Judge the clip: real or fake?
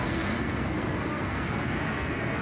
fake